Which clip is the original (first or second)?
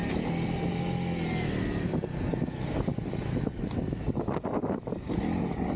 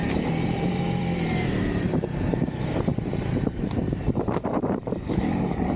first